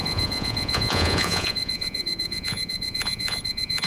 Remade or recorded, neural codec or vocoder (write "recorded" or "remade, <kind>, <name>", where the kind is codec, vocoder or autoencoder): remade, vocoder, Vocos